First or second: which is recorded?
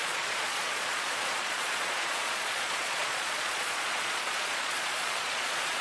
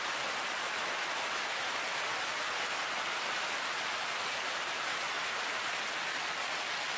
second